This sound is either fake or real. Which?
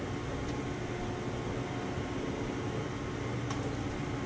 real